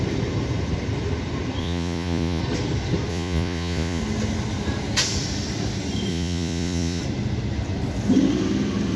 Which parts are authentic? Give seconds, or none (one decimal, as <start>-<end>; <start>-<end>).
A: 0.0-1.6; 2.4-3.1; 4.0-6.1; 7.0-9.0